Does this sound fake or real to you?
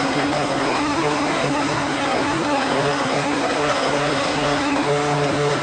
fake